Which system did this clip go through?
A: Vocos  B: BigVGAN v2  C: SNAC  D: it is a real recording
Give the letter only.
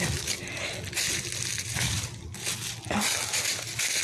D